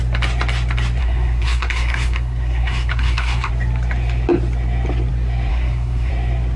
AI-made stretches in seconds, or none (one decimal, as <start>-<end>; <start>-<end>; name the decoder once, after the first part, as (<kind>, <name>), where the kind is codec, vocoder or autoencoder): 1.0-3.5 (codec, SNAC); 5.5-6.1